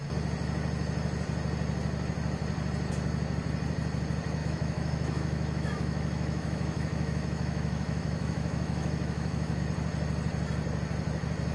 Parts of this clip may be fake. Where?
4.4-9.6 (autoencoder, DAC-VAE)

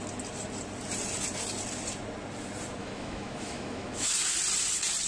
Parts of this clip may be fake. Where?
2.8-4.1 (autoencoder, DAC-VAE)

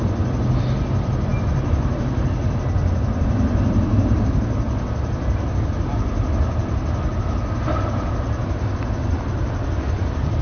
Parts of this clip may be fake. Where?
none

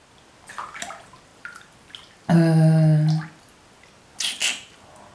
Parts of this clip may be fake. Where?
none